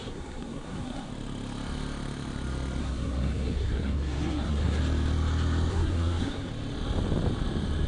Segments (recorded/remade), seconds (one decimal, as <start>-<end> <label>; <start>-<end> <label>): 0.0-1.1 remade; 1.1-2.8 recorded; 2.8-4.8 remade; 4.8-5.7 recorded; 5.7-6.5 remade; 6.5-7.9 recorded